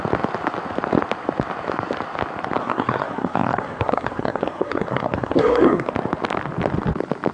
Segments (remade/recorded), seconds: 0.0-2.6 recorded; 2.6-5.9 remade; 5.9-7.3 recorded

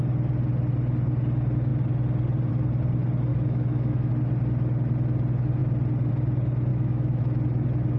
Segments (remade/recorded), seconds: 0.0-3.3 recorded; 3.3-4.1 remade; 4.1-6.7 recorded; 6.7-7.2 remade; 7.2-8.0 recorded

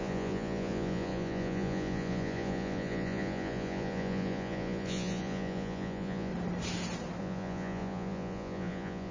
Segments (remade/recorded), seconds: 0.0-6.3 remade; 6.3-7.2 recorded; 7.2-9.1 remade

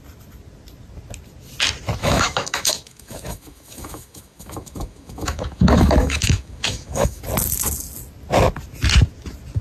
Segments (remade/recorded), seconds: 0.0-2.0 recorded; 2.0-7.2 remade; 7.2-9.6 recorded

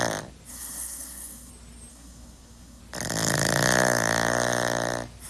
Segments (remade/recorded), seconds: 0.0-0.5 recorded; 0.5-1.5 remade; 1.5-1.9 recorded; 1.9-2.8 remade; 2.8-5.3 recorded

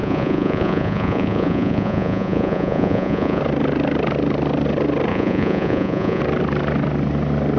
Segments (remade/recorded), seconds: 0.0-3.4 remade; 3.4-5.1 recorded; 5.1-6.2 remade; 6.2-7.6 recorded